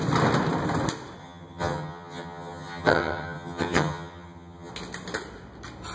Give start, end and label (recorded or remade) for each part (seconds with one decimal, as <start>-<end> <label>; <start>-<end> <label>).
0.0-1.2 recorded; 1.2-4.7 remade; 4.7-5.9 recorded